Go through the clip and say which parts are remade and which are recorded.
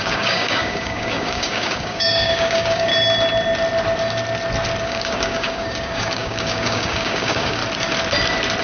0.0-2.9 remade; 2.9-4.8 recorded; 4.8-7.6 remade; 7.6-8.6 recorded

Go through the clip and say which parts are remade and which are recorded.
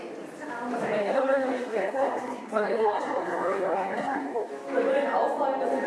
0.0-1.0 recorded; 1.0-4.5 remade; 4.5-5.9 recorded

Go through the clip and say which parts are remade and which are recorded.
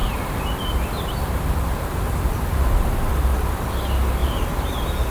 0.0-3.1 remade; 3.1-4.2 recorded; 4.2-5.1 remade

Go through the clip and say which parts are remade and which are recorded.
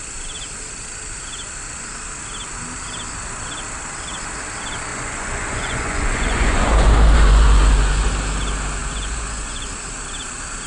0.0-4.9 recorded; 4.9-8.1 remade; 8.1-8.8 recorded; 8.8-9.7 remade; 9.7-10.7 recorded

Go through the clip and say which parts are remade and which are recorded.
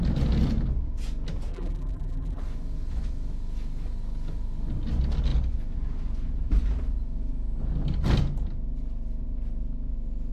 0.0-1.5 recorded; 1.5-2.4 remade; 2.4-10.3 recorded